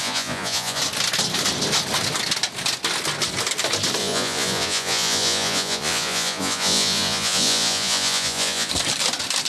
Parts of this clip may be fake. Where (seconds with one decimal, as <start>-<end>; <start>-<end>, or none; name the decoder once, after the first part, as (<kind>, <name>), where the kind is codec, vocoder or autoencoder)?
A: 0.0-0.8 (vocoder, Vocos); 4.0-8.7